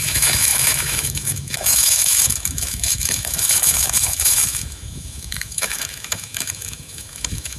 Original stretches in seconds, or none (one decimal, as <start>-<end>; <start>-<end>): none